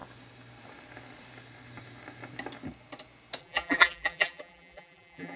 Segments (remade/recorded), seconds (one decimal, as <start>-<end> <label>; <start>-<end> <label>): 0.0-3.4 recorded; 3.4-5.4 remade